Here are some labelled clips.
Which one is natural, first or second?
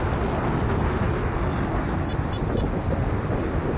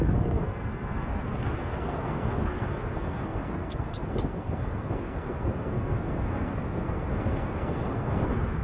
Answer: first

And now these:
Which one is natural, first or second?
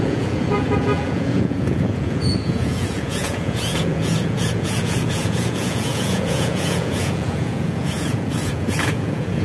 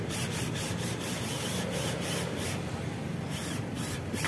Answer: second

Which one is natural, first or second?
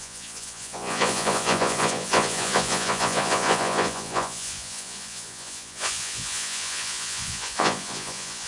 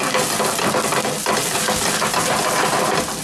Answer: second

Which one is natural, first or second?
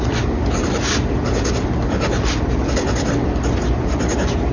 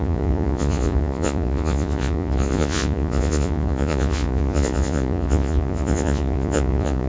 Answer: first